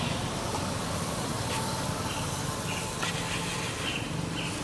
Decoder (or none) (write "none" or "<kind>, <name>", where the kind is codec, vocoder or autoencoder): none